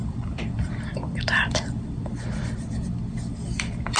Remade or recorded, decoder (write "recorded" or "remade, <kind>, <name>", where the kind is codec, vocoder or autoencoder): remade, vocoder, BigVGAN v2